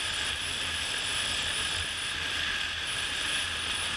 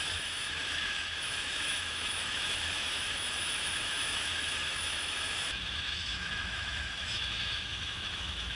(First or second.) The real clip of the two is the first